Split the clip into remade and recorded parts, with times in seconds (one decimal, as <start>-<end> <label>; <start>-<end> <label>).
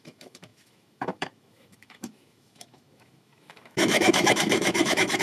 0.0-5.2 remade